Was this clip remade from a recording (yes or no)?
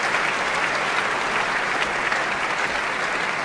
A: no